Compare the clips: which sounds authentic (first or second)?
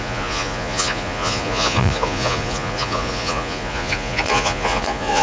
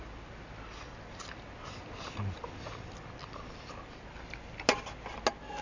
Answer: second